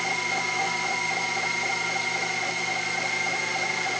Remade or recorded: remade